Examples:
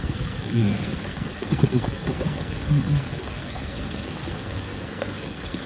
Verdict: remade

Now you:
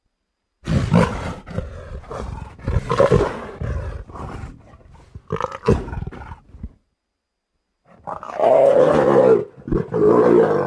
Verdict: recorded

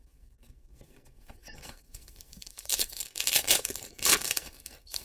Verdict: remade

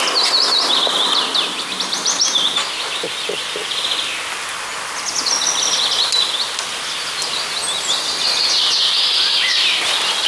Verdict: recorded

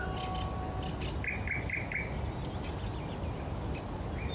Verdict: recorded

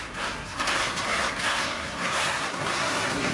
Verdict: remade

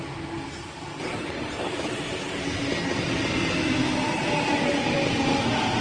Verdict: recorded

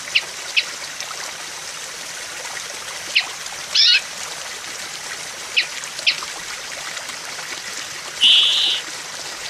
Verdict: recorded